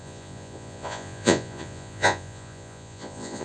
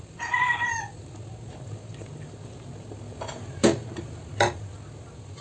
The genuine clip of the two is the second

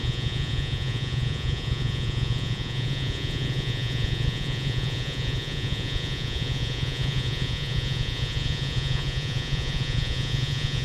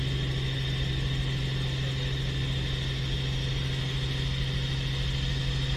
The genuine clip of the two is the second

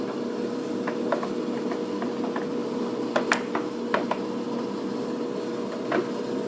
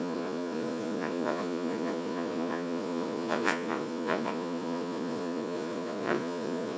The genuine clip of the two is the first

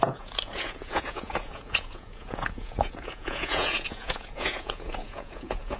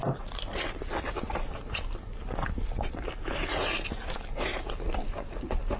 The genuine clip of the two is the second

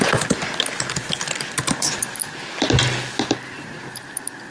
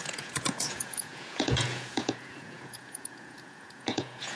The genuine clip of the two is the first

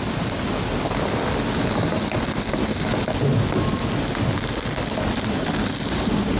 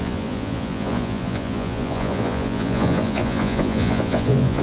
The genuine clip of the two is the first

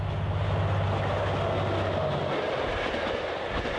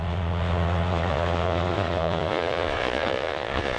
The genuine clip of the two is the first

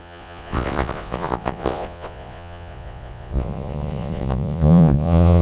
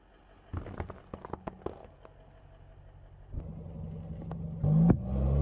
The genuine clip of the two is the second